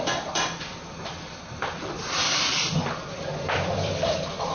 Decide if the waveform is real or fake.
fake